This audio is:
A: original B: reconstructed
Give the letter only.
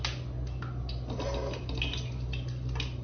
A